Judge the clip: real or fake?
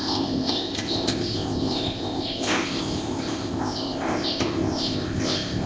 fake